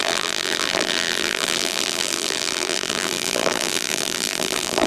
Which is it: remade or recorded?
remade